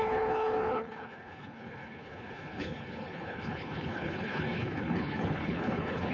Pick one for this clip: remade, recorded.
remade